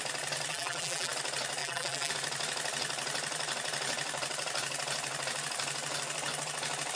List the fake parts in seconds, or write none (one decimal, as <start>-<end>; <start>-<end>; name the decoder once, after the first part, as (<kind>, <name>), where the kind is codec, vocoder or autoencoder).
0.5-1.1 (vocoder, BigVGAN v2); 1.6-2.1